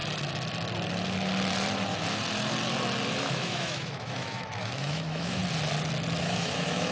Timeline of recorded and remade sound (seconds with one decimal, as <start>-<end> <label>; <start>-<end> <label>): 0.0-3.2 recorded; 3.2-5.4 remade; 5.4-6.2 recorded; 6.2-6.9 remade